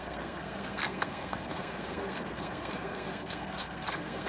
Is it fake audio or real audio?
fake